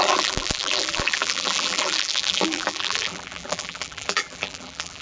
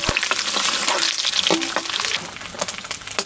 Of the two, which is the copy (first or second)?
first